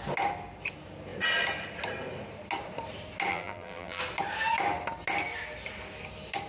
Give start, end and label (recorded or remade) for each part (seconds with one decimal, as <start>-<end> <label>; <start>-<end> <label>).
0.0-3.3 recorded; 3.3-4.0 remade; 4.0-6.5 recorded